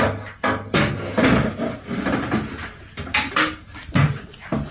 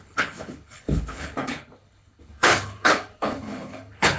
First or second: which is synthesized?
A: second